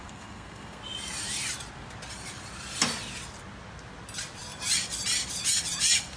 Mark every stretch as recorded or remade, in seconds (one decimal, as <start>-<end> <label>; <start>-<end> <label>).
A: 0.0-0.8 remade; 0.8-6.2 recorded